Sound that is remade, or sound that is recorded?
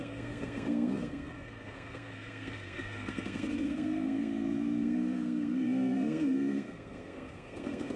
remade